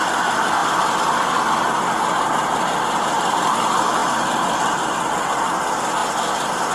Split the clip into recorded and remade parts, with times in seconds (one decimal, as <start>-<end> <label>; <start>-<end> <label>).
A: 0.0-6.7 recorded